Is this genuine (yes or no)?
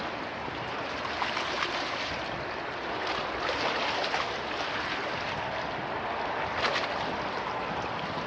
yes